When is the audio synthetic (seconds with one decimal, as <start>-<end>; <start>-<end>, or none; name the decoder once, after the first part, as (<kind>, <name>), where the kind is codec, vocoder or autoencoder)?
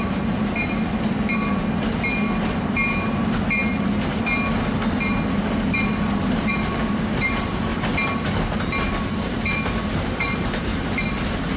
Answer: 0.0-0.4 (vocoder, BigVGAN v2); 2.5-3.6; 6.1-7.7; 9.0-10.7